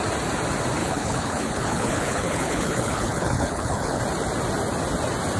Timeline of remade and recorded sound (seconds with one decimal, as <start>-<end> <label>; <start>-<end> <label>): 0.0-0.8 recorded; 0.8-4.0 remade; 4.0-5.4 recorded